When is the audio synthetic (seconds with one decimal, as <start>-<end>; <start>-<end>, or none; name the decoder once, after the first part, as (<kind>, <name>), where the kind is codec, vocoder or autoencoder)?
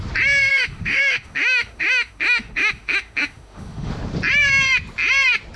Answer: 0.5-3.9 (autoencoder, DAC-VAE)